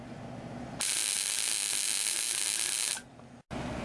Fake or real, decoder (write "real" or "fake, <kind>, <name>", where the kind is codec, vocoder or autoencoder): real